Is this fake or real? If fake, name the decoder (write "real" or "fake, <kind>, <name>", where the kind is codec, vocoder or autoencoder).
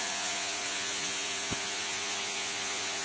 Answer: fake, vocoder, Vocos